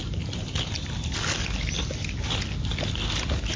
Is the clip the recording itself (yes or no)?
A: yes